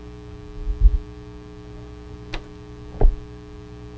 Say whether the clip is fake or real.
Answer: real